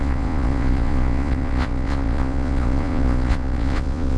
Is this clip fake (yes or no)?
yes